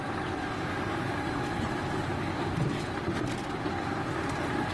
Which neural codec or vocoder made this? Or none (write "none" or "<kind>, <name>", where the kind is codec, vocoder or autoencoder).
none